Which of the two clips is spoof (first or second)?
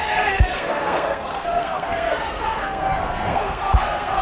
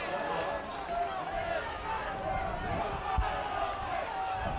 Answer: first